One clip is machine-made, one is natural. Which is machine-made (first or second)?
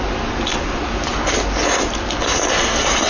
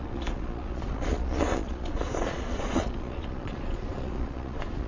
second